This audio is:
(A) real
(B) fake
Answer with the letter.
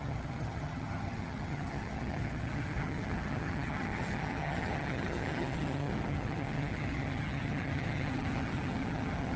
B